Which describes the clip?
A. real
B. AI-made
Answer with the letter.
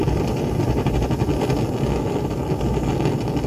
A